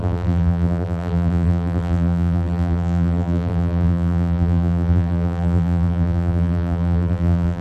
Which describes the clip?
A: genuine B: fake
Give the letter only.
B